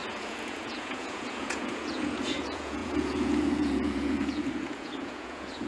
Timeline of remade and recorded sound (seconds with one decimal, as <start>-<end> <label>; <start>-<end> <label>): 0.0-5.7 remade